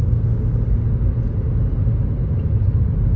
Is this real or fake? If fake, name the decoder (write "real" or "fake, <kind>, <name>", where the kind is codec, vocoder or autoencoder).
real